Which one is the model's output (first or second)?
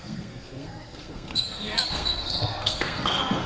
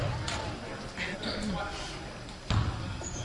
first